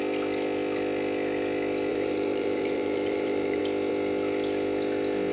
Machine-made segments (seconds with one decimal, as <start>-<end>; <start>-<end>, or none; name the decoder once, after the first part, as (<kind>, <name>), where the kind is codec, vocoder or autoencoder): 1.9-3.6 (vocoder, BigVGAN v2)